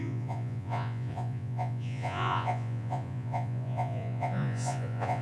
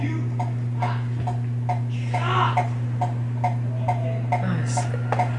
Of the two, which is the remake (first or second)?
first